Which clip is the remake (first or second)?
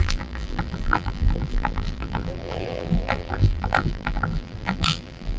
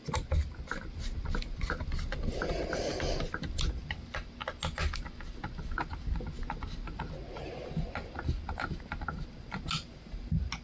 first